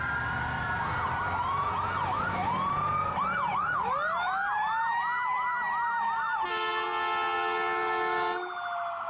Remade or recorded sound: recorded